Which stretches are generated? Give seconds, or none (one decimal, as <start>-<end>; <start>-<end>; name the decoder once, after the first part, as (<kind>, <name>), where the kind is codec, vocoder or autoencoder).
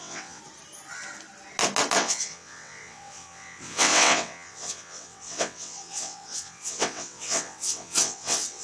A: 0.0-0.4 (vocoder, WaveNeXt); 2.0-8.6